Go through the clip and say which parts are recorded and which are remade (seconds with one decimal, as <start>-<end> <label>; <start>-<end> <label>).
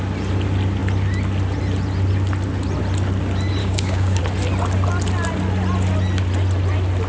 0.0-3.6 recorded; 3.6-4.2 remade; 4.2-7.1 recorded